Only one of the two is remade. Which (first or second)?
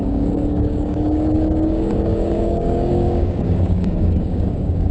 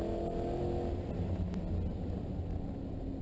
first